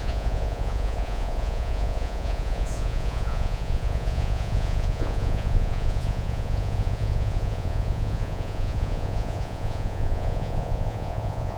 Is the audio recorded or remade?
remade